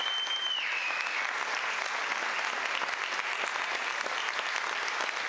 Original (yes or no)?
yes